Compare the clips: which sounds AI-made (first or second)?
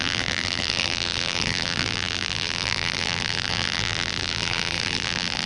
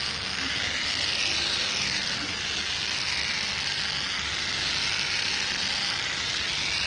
first